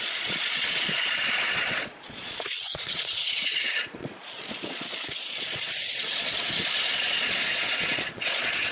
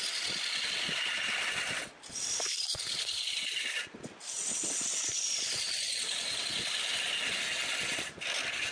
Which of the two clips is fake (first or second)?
first